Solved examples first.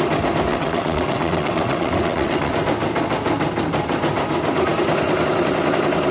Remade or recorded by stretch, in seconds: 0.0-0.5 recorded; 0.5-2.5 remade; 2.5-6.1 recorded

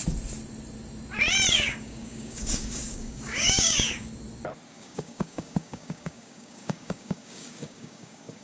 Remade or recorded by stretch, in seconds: 0.0-1.5 recorded; 1.5-4.1 remade; 4.1-4.7 recorded; 4.7-8.4 remade

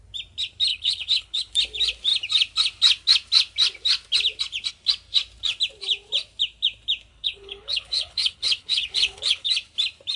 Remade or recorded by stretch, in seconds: 0.0-0.7 recorded; 0.7-1.5 remade; 1.5-7.1 recorded; 7.1-9.5 remade; 9.5-10.2 recorded

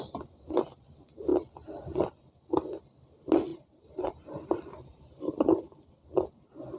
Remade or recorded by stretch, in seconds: 0.0-3.5 recorded; 3.5-5.0 remade; 5.0-6.8 recorded

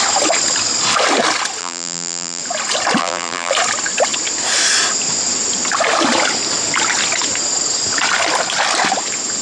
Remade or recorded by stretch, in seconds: 0.0-1.6 recorded; 1.6-2.4 remade; 2.4-3.0 recorded; 3.0-3.5 remade; 3.5-9.4 recorded